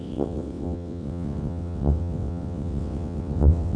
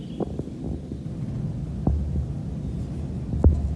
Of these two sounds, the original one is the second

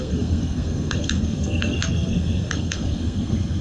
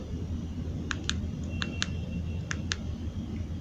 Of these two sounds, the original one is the second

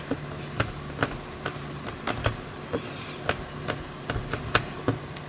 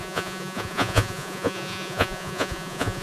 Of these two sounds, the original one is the first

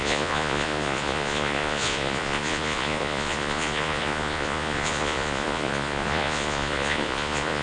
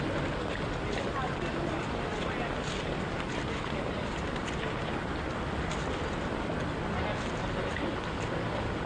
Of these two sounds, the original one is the second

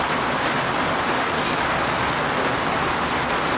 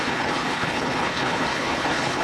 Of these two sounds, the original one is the first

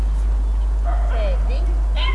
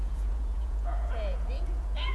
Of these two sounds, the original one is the first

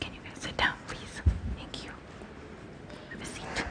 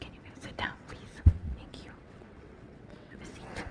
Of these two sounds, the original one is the first